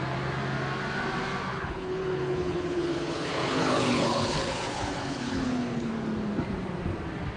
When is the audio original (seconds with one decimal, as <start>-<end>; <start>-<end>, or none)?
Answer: 0.0-1.5; 5.9-7.4